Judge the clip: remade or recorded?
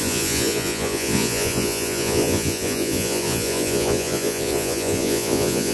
remade